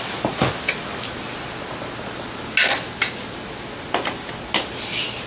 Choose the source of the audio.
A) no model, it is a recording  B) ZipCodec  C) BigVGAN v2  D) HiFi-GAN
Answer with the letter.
A